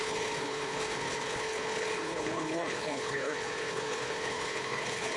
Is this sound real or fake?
fake